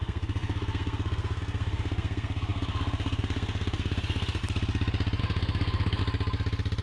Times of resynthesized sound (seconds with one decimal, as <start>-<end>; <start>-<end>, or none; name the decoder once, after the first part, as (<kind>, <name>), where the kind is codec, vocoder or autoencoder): 0.0-4.4 (codec, SNAC); 5.2-6.0